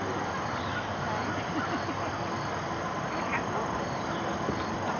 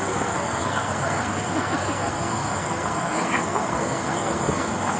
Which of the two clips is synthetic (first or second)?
second